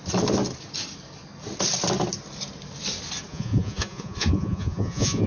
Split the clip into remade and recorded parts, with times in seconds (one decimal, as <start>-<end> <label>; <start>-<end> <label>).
0.0-3.3 recorded; 3.3-5.3 remade